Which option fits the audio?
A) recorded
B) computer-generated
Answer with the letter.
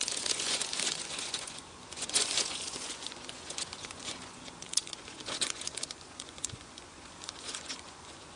B